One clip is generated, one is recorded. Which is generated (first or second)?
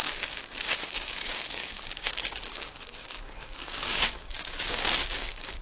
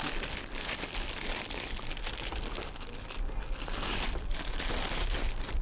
first